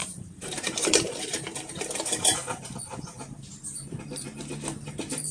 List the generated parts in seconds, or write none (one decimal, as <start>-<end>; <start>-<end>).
0.0-3.2